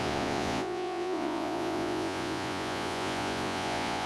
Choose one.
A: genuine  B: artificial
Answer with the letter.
B